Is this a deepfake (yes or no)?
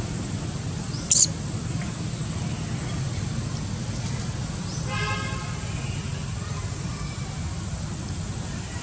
no